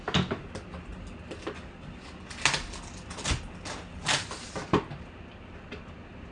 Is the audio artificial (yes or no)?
no